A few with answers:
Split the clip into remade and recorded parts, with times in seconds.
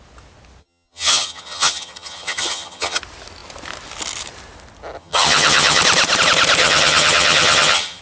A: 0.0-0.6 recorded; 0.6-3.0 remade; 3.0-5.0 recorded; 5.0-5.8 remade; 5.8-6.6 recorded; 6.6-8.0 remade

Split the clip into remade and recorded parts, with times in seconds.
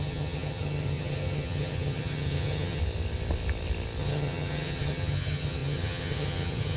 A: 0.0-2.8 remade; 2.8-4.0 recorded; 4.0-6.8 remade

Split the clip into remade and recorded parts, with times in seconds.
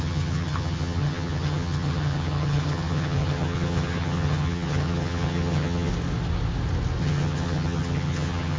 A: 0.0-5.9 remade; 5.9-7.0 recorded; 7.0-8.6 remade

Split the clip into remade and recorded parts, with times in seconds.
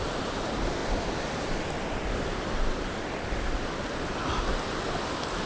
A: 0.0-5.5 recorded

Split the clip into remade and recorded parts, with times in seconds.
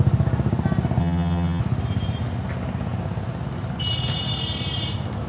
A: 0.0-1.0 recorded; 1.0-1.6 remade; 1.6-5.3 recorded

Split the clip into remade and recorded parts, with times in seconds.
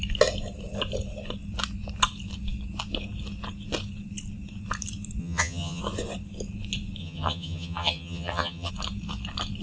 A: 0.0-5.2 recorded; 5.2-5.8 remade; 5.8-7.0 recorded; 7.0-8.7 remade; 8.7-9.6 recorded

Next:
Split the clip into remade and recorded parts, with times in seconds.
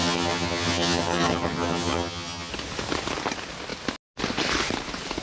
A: 0.0-2.5 remade; 2.5-5.2 recorded